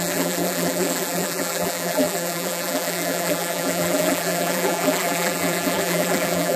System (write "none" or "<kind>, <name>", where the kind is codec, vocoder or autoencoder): vocoder, BigVGAN v2